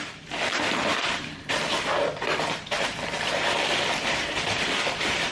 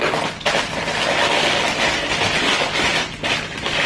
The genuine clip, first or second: second